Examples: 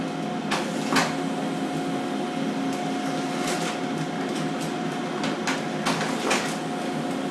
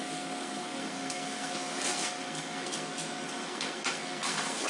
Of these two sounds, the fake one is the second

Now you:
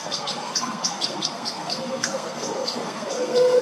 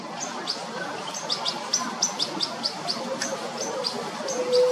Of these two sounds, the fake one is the first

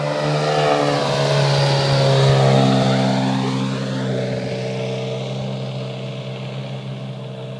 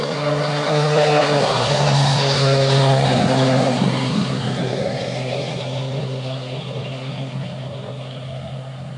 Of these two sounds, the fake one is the second